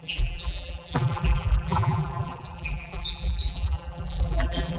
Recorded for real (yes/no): no